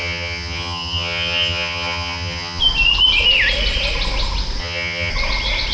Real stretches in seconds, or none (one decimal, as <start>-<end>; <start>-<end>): 2.6-4.6; 5.1-5.7